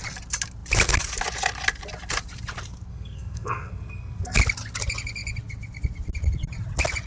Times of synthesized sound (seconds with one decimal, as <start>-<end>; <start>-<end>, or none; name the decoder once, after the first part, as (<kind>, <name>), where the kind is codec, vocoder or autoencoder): 2.9-4.4 (codec, SNAC)